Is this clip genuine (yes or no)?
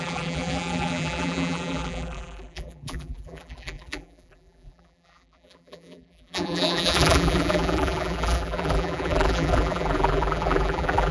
no